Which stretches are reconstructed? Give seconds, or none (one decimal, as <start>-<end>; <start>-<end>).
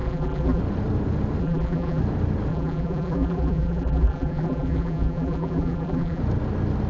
0.0-0.6; 1.4-2.0; 2.5-6.2